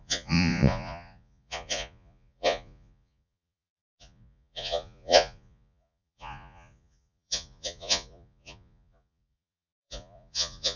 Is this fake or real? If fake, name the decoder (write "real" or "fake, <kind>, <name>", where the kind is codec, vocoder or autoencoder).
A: fake, vocoder, Vocos